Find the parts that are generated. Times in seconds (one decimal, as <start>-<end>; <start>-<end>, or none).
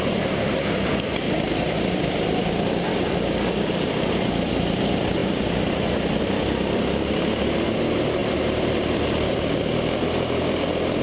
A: 2.9-3.9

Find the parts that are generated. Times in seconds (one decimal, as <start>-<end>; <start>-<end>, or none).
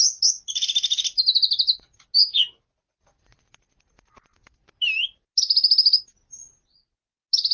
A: none